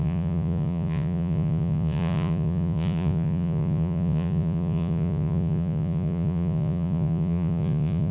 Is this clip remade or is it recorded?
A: remade